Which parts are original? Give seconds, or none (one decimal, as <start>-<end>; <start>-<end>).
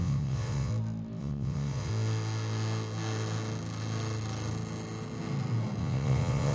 0.7-1.2; 1.9-5.8